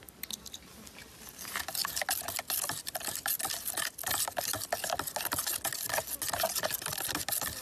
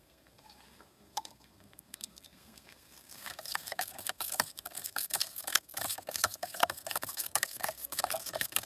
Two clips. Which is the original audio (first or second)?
first